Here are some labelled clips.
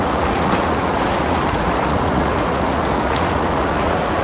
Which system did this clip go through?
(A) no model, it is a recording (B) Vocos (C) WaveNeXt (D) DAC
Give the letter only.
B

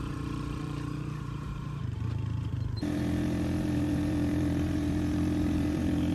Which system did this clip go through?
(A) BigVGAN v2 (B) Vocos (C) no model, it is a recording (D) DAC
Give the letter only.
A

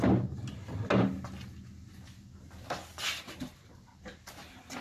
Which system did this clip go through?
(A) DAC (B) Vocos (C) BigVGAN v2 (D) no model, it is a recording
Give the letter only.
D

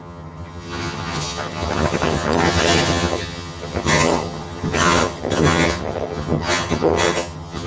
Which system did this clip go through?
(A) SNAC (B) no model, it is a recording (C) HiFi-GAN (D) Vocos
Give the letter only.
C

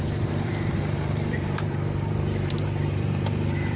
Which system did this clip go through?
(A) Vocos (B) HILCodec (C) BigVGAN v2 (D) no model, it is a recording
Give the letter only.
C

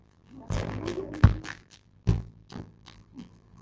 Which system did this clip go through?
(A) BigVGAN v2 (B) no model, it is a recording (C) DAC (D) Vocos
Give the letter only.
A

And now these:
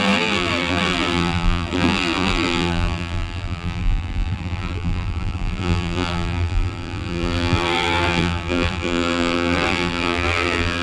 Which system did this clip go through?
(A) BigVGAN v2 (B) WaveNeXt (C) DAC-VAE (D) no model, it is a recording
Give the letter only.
A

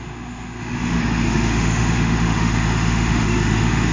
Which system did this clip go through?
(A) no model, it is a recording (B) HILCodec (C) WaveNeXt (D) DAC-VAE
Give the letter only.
D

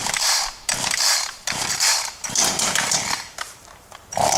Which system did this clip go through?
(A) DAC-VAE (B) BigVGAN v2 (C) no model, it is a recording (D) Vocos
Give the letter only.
B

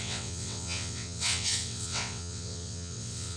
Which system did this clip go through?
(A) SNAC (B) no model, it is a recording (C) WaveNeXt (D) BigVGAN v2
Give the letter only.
C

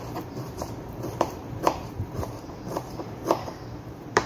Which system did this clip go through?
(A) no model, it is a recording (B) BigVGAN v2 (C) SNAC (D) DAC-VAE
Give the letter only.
B